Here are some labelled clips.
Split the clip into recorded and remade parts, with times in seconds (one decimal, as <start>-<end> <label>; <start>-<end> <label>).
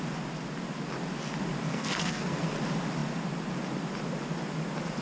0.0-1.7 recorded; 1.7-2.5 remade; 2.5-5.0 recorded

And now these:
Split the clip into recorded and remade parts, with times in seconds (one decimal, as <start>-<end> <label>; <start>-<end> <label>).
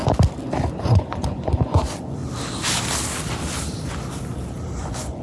0.0-0.8 recorded; 0.8-2.2 remade; 2.2-4.8 recorded; 4.8-5.2 remade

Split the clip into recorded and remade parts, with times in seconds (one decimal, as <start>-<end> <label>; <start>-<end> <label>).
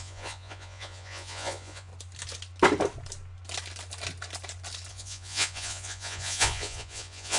0.0-1.9 remade; 1.9-4.9 recorded; 4.9-7.4 remade